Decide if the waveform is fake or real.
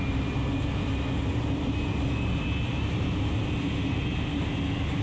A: real